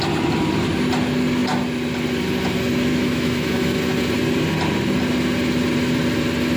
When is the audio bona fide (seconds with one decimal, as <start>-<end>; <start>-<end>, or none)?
0.0-2.9; 3.8-6.6